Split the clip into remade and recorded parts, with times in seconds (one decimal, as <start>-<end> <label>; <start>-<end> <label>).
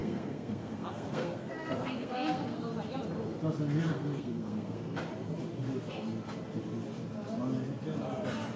0.0-2.7 remade; 2.7-3.9 recorded; 3.9-5.0 remade; 5.0-8.6 recorded